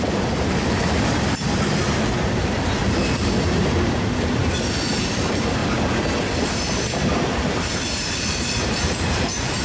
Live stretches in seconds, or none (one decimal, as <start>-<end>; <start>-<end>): 2.8-3.4; 4.4-4.9; 5.6-6.4